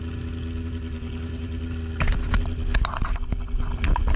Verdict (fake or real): real